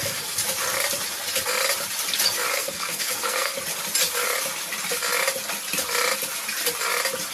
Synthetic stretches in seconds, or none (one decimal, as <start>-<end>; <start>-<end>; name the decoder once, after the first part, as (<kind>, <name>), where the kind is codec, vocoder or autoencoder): 0.0-0.4 (codec, SNAC); 2.5-3.5